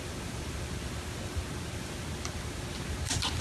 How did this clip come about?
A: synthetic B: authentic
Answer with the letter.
B